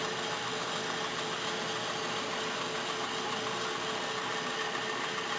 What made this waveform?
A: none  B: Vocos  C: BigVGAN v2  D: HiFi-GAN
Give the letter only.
A